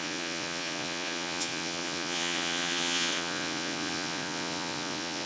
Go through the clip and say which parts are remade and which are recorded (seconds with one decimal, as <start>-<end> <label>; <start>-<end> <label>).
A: 0.0-5.3 remade